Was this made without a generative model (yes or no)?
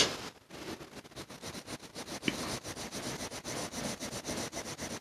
yes